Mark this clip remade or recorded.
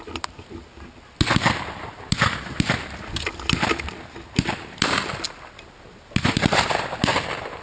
recorded